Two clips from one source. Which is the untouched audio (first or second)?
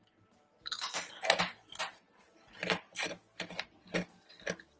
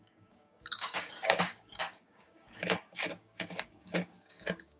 first